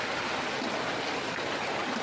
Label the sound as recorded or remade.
recorded